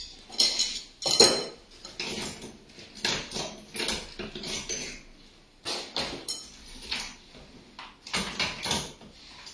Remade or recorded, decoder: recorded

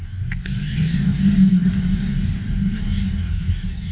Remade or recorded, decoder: remade, codec, DAC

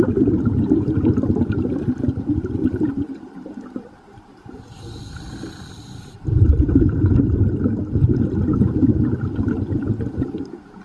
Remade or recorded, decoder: remade, vocoder, BigVGAN v2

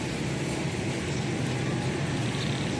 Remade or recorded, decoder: recorded